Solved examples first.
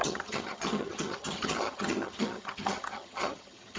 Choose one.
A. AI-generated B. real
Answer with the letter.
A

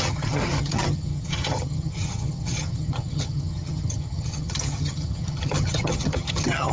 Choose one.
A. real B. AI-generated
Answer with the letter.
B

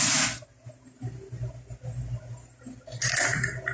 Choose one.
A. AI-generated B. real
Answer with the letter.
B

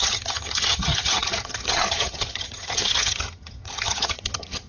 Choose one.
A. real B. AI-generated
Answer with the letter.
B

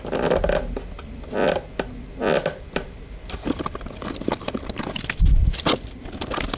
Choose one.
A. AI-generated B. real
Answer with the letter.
B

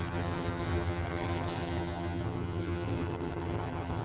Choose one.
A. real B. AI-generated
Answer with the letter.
B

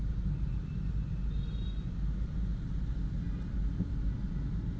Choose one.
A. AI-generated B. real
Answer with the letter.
B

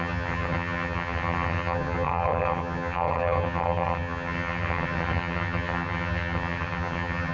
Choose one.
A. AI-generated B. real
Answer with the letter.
A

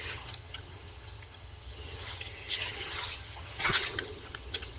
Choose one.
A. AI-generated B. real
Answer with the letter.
A